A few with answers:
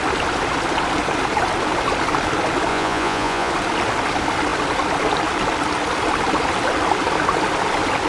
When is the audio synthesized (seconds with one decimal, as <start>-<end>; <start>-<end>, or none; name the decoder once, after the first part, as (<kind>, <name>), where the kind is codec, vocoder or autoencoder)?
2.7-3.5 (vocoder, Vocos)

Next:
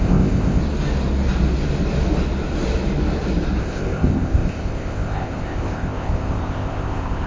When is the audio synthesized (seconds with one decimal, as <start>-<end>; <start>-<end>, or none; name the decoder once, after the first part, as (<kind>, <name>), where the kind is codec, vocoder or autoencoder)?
0.0-0.6 (codec, ZipCodec); 3.6-7.3

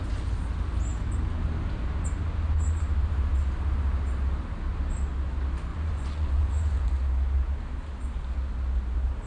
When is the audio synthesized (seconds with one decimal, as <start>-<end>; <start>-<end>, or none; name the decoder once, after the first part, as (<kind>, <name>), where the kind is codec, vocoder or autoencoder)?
5.7-6.9 (vocoder, Vocos)